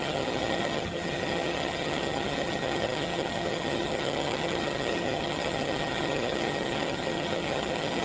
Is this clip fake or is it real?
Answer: fake